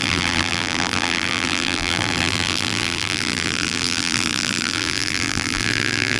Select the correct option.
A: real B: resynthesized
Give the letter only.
B